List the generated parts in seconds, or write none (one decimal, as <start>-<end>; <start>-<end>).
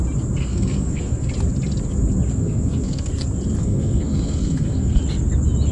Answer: 0.5-1.3; 2.3-3.1; 3.6-5.0